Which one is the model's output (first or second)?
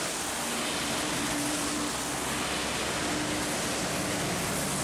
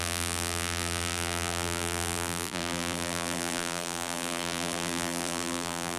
second